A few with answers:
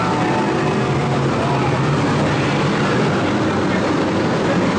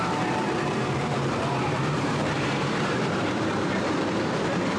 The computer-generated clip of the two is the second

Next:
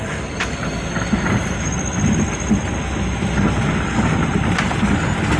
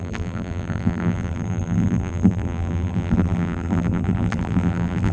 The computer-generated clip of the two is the second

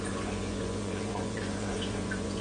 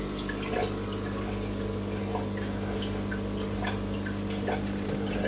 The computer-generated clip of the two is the first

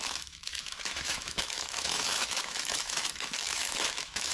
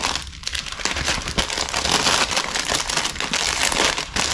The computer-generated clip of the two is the first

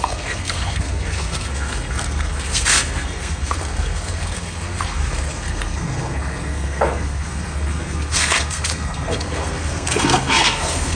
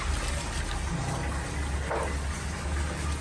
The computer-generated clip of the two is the first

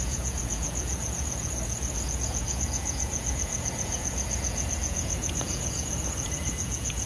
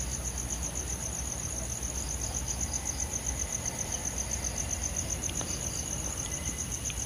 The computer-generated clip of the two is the first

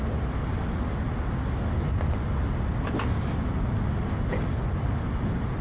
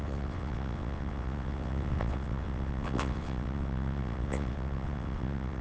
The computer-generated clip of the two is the second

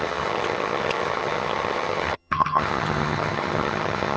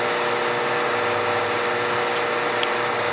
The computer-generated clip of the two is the first